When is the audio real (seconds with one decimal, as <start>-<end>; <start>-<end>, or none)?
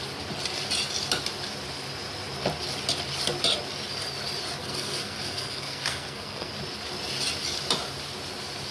0.0-4.6; 6.5-8.7